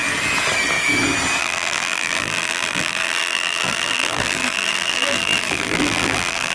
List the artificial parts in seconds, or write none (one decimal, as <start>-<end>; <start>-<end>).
1.4-6.5